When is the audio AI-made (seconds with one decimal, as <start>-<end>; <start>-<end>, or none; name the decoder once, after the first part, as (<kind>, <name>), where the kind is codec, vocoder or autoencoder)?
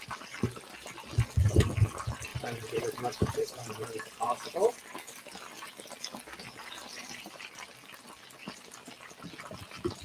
2.3-4.7 (vocoder, BigVGAN v2)